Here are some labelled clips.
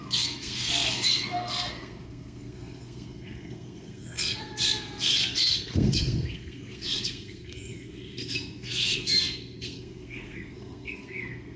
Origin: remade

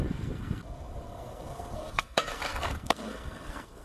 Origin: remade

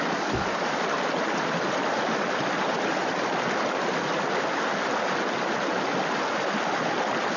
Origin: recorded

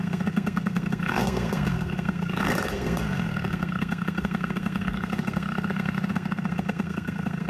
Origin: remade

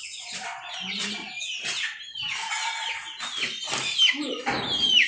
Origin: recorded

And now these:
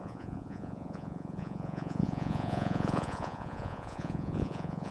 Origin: remade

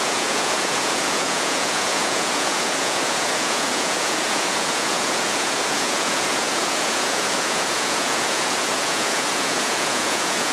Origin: remade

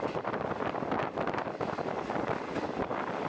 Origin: recorded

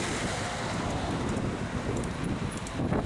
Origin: recorded